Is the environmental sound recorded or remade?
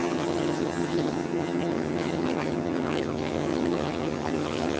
remade